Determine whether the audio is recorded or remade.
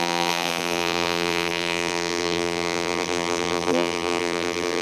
remade